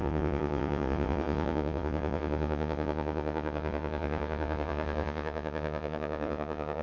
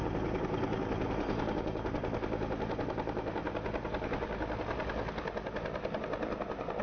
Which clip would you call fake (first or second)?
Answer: first